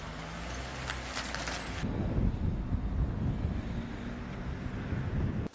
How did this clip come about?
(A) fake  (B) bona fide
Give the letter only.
B